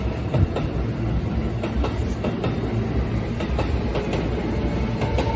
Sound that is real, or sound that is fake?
real